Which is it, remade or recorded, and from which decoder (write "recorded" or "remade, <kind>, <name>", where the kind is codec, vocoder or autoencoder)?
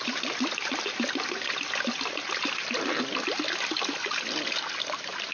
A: recorded